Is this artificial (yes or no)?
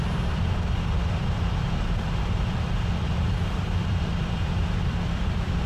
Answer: yes